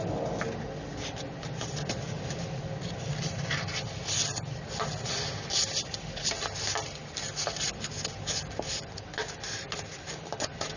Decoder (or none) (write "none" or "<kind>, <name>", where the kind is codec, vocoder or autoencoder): none